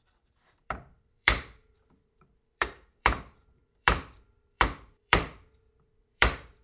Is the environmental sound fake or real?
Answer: fake